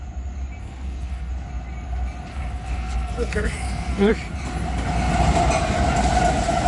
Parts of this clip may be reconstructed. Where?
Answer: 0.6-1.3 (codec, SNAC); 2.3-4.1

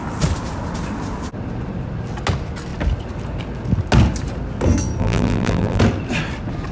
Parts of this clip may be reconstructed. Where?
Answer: 5.0-5.8 (vocoder, BigVGAN v2)

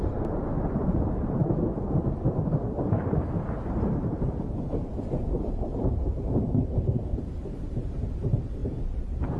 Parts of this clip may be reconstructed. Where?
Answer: 0.0-1.4 (vocoder, BigVGAN v2); 2.5-9.4